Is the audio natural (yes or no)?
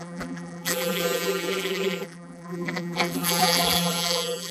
no